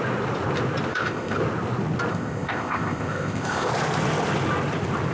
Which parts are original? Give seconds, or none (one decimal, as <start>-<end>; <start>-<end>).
0.0-0.9; 1.4-2.1; 3.7-5.1